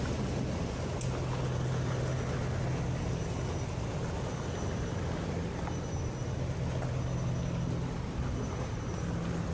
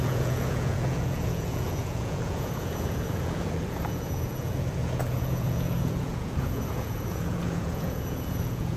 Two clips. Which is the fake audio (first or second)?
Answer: second